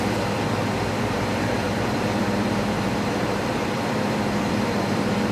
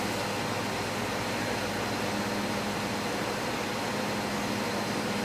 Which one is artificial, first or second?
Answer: first